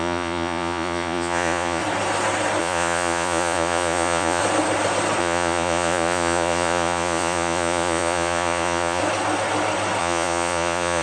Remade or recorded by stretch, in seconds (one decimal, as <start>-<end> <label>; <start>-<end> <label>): 0.0-1.8 remade; 1.8-2.6 recorded; 2.6-4.4 remade; 4.4-5.2 recorded; 5.2-9.0 remade; 9.0-10.0 recorded; 10.0-11.0 remade